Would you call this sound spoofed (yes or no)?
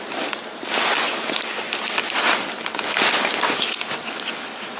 no